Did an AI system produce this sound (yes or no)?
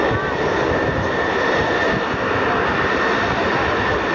no